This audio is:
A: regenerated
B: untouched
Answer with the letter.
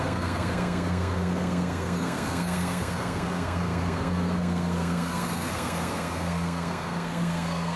A